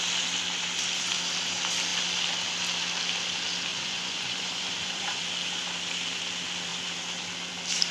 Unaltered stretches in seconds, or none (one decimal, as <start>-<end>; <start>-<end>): 0.0-3.7; 5.2-7.9